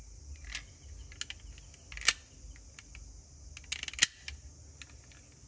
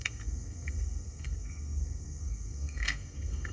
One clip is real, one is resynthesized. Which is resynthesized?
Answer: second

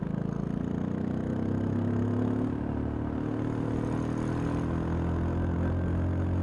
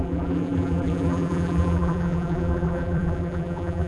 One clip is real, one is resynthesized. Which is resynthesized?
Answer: second